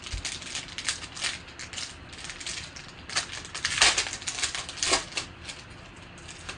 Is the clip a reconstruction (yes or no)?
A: no